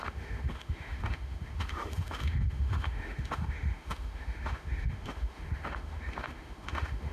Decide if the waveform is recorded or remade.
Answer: remade